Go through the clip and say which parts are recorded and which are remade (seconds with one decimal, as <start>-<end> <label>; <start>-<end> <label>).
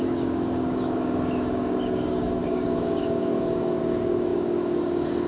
0.0-5.3 remade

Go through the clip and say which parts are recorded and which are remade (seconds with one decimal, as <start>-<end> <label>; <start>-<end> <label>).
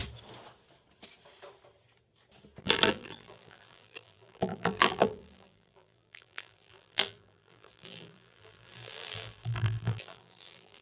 0.0-2.6 recorded; 2.6-10.8 remade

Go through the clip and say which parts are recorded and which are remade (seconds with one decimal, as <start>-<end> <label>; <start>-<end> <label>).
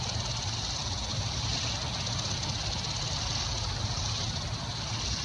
0.0-5.2 recorded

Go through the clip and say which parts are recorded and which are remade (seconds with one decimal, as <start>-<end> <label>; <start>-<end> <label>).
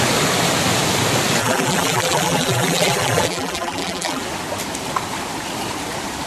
0.0-1.4 recorded; 1.4-4.2 remade; 4.2-6.3 recorded